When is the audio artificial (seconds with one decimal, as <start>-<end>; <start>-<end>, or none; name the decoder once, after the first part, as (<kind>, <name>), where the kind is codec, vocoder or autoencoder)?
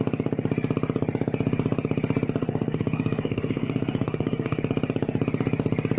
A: 2.4-4.6 (codec, SNAC)